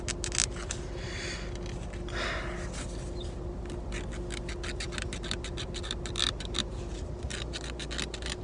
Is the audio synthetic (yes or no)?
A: no